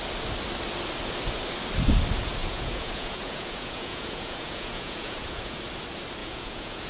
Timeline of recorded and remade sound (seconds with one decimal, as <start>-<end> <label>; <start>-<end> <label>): 0.0-2.4 recorded; 2.4-5.6 remade; 5.6-6.2 recorded; 6.2-6.9 remade